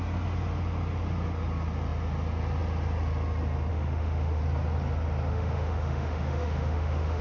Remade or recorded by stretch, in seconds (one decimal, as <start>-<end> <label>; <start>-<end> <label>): 0.0-3.7 recorded; 3.7-4.4 remade; 4.4-5.3 recorded; 5.3-7.2 remade